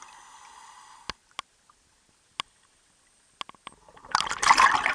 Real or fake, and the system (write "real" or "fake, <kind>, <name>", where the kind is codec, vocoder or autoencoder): real